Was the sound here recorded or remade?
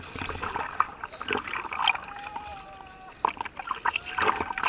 recorded